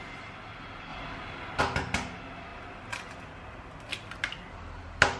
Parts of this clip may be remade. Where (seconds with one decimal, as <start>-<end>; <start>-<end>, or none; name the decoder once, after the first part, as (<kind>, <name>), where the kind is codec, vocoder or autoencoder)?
none